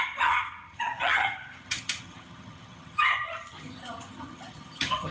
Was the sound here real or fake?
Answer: fake